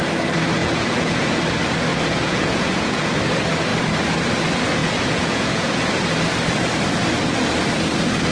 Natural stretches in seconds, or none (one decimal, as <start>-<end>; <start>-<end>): 0.0-0.6; 1.4-1.9; 3.2-4.8; 5.9-8.3